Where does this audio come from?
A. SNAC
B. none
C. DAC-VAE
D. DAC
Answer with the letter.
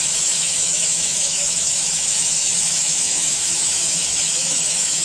C